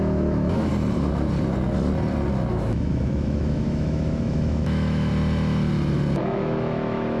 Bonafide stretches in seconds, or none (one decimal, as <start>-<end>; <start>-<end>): 0.7-2.5; 5.1-6.2